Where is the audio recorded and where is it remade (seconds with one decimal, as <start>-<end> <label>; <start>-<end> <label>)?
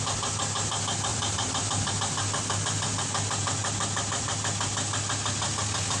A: 0.0-1.1 recorded; 1.1-1.9 remade; 1.9-6.0 recorded